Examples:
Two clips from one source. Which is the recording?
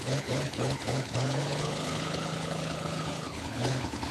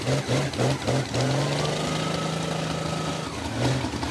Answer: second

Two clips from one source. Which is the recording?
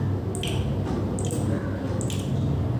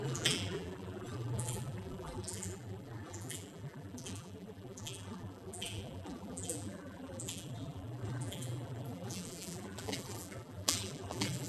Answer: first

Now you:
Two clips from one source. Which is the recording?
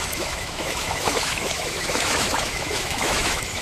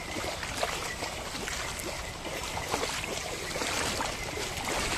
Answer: second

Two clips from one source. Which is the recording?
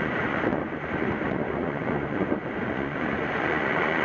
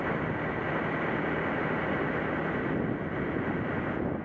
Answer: second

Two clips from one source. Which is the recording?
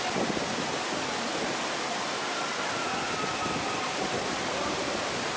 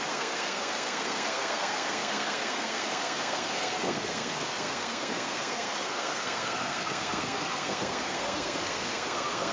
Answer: first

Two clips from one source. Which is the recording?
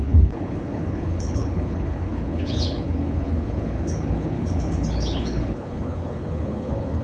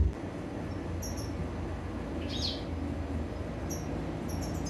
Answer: second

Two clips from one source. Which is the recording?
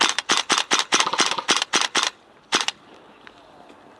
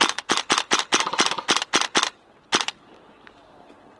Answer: second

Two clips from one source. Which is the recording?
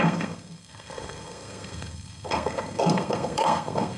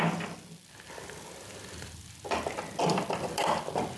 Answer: second